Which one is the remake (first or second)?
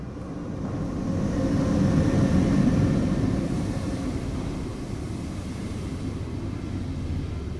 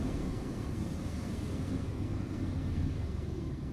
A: second